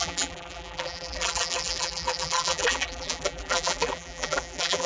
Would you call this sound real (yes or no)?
no